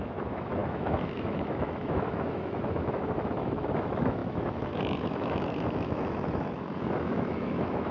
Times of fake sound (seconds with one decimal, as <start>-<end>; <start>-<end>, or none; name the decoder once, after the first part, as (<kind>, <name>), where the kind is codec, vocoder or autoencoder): 0.0-7.9 (autoencoder, DAC-VAE)